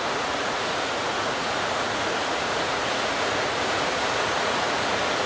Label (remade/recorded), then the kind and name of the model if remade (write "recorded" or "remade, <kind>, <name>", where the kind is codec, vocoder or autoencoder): remade, vocoder, Vocos